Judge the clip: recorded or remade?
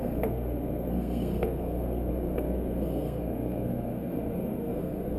remade